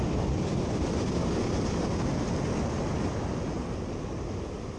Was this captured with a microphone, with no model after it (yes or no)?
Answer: yes